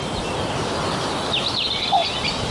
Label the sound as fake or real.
real